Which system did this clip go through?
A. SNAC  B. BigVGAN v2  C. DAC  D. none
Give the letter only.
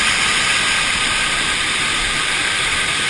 D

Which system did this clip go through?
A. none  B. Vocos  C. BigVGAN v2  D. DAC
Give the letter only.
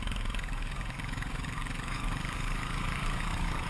D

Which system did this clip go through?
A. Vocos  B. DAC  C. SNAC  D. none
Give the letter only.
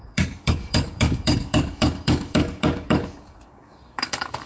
B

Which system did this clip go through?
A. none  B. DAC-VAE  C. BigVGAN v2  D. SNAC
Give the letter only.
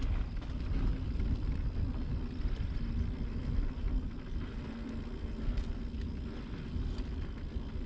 A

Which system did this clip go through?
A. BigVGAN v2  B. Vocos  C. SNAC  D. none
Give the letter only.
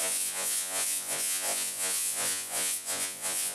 B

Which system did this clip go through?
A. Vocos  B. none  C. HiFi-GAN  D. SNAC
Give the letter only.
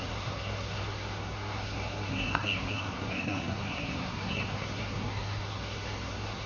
D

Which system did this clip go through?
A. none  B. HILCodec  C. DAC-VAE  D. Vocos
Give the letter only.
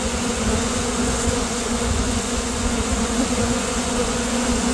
D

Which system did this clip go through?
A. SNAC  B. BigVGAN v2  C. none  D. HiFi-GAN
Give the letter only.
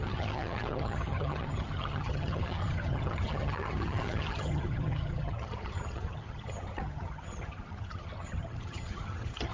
D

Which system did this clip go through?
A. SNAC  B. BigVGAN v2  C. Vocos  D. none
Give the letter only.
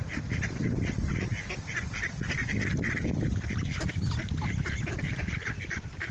B